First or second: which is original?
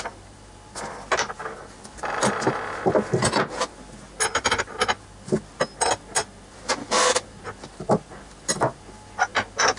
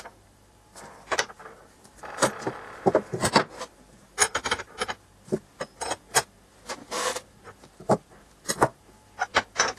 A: first